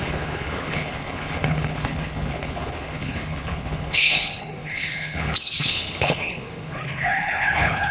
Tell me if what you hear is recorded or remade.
remade